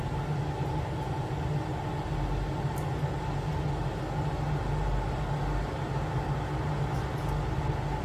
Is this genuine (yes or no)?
yes